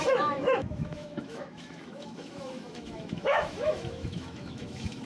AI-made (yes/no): yes